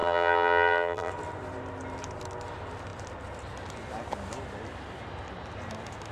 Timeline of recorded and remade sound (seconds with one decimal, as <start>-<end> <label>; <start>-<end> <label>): 0.0-1.1 remade; 1.1-6.1 recorded